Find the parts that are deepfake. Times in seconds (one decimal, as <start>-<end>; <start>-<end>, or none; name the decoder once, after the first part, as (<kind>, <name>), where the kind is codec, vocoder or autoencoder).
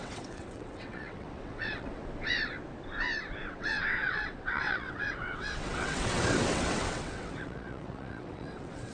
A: 0.0-2.0 (vocoder, WaveNeXt); 3.4-8.9